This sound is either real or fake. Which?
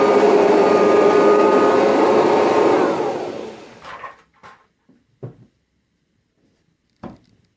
fake